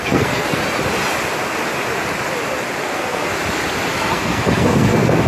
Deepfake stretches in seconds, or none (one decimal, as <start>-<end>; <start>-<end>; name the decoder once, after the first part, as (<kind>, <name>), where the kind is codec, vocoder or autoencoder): 0.0-0.6 (codec, SNAC); 2.8-3.3; 3.9-5.3